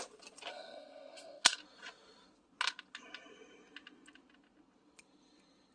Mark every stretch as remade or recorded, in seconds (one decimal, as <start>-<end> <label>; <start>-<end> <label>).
0.0-0.5 recorded; 0.5-1.6 remade; 1.6-5.7 recorded